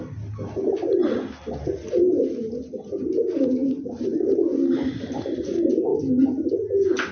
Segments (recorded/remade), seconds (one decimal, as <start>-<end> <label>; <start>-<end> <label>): 0.0-7.1 recorded